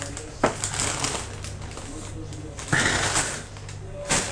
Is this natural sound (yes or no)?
yes